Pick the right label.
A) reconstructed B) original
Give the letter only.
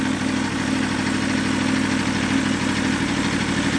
B